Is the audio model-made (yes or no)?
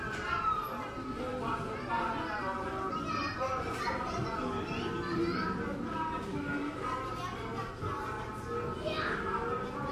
no